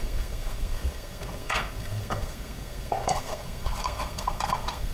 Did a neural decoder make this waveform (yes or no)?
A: yes